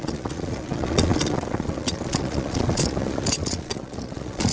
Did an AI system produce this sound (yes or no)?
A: yes